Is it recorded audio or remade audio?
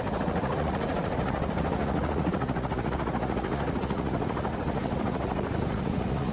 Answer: remade